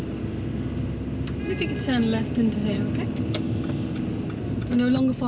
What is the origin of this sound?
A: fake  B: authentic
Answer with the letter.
B